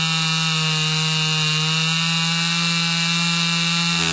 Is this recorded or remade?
recorded